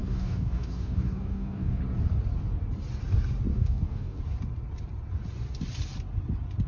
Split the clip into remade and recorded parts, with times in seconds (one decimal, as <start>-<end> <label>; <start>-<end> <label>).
0.0-1.8 remade; 1.8-3.5 recorded; 3.5-4.2 remade; 4.2-6.7 recorded